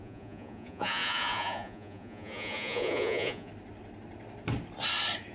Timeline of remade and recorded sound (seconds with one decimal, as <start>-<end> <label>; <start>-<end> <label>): 0.0-3.5 remade; 3.5-5.3 recorded